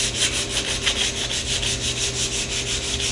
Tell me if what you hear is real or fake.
real